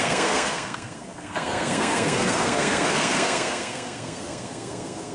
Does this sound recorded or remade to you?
remade